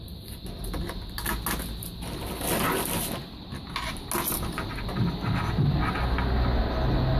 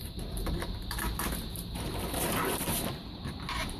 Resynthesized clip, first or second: second